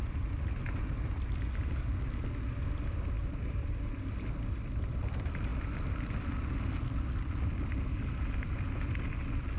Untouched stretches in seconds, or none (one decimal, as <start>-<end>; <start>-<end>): 0.0-9.6